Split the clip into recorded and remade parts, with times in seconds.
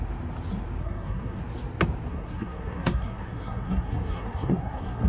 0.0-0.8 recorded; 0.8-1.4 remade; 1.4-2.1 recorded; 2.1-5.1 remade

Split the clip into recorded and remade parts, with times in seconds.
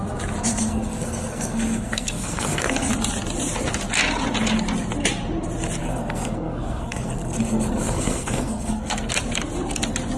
0.0-0.5 recorded; 0.5-2.9 remade; 2.9-5.8 recorded; 5.8-9.1 remade; 9.1-10.2 recorded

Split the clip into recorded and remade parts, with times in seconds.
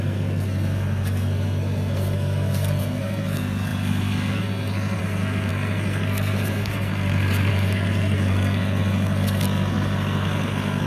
0.0-10.9 remade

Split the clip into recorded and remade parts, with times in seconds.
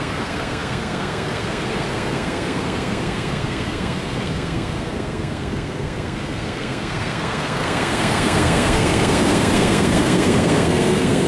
0.0-11.3 remade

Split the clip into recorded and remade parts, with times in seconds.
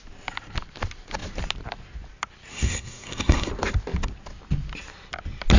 0.0-2.5 recorded; 2.5-3.5 remade; 3.5-5.6 recorded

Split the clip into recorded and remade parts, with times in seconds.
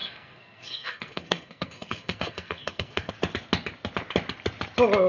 0.0-3.1 remade; 3.1-5.1 recorded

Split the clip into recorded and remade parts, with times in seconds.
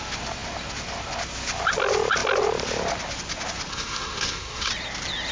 0.0-3.7 recorded; 3.7-4.7 remade; 4.7-5.3 recorded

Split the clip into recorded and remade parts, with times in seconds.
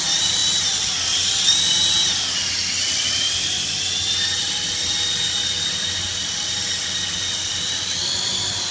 0.0-8.7 recorded